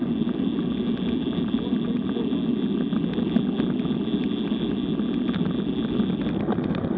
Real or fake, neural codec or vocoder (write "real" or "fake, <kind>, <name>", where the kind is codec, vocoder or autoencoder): real